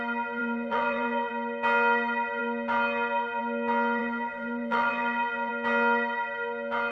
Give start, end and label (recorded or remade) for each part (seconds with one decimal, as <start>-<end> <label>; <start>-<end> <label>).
0.0-0.4 recorded; 0.4-1.3 remade; 1.3-4.0 recorded; 4.0-5.5 remade; 5.5-6.9 recorded